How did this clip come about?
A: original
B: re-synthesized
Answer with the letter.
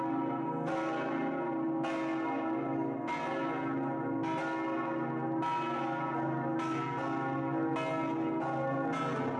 A